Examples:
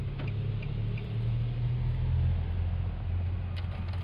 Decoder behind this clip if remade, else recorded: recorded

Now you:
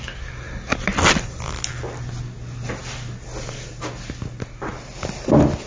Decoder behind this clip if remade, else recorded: recorded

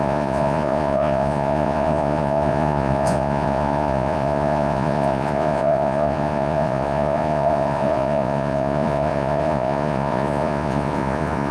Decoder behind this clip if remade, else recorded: remade, vocoder, Vocos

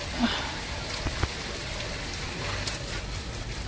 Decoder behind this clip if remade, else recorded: recorded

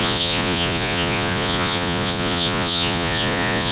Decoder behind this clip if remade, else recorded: remade, vocoder, Vocos